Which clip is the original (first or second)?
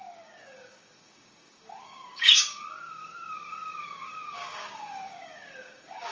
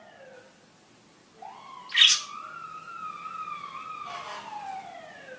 second